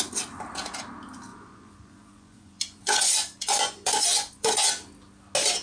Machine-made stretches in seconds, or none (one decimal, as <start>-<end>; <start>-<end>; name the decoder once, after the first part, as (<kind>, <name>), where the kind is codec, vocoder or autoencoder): 1.3-4.7 (vocoder, Vocos)

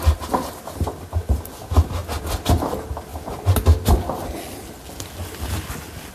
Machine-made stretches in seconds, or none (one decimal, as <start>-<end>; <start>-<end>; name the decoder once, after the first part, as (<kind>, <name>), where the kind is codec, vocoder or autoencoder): none